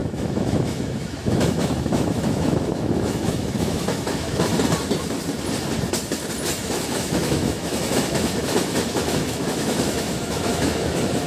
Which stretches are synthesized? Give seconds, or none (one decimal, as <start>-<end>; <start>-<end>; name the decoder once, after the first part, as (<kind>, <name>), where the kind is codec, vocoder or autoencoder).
0.0-4.5 (autoencoder, DAC-VAE); 6.6-11.3

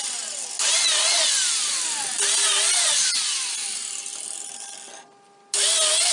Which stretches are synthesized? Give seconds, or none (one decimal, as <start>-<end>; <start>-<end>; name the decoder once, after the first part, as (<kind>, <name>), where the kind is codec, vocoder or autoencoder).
none

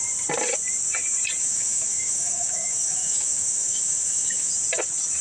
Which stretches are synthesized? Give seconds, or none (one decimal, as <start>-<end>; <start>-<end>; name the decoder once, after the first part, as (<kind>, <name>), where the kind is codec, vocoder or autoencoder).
1.4-4.5 (autoencoder, DAC-VAE)